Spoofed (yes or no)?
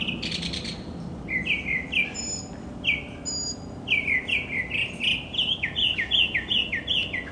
no